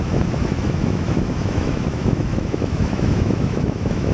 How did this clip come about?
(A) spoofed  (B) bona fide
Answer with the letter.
A